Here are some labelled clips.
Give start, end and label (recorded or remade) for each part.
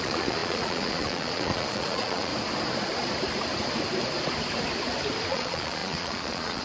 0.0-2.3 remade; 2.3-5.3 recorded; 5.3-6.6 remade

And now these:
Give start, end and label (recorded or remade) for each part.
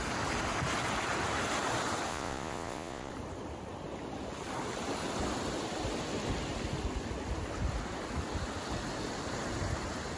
0.0-2.1 recorded; 2.1-3.1 remade; 3.1-10.2 recorded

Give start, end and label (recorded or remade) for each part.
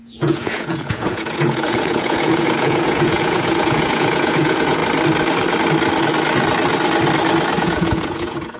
0.0-4.8 remade; 4.8-7.6 recorded; 7.6-8.6 remade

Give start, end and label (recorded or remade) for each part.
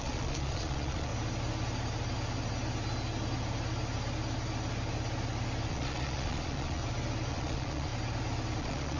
0.0-1.1 remade; 1.1-5.7 recorded; 5.7-6.8 remade; 6.8-7.3 recorded; 7.3-7.9 remade; 7.9-8.6 recorded; 8.6-9.0 remade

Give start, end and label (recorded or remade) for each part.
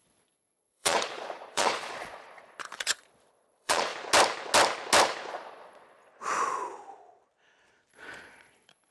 0.0-3.9 remade; 3.9-5.3 recorded; 5.3-6.1 remade; 6.1-7.9 recorded; 7.9-8.9 remade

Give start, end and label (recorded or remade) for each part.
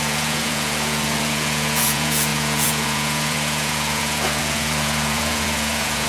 0.0-6.1 remade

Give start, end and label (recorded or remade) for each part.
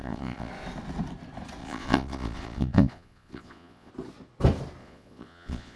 0.0-0.5 remade; 0.5-1.6 recorded; 1.6-3.9 remade; 3.9-4.8 recorded; 4.8-5.8 remade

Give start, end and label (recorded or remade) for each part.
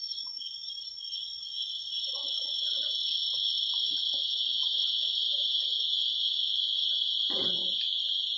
0.0-3.0 remade; 3.0-3.7 recorded; 3.7-7.6 remade; 7.6-8.4 recorded